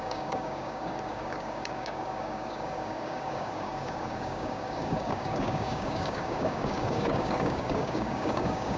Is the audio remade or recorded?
remade